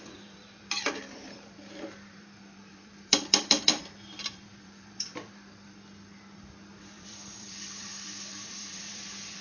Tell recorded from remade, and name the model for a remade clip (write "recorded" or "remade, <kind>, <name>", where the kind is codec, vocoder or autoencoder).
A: remade, vocoder, BigVGAN v2